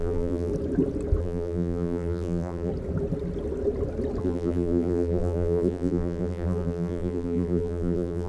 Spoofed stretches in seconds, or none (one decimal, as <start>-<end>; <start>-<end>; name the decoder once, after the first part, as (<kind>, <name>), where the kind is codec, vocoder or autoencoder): 0.0-0.5 (vocoder, BigVGAN v2); 1.2-2.7; 4.2-8.3